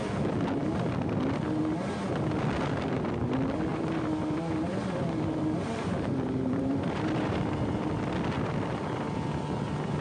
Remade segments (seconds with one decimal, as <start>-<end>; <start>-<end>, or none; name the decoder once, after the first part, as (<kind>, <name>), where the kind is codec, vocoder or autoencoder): 3.7-7.4 (vocoder, BigVGAN v2)